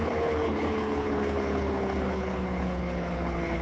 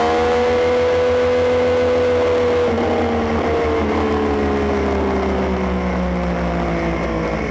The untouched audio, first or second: second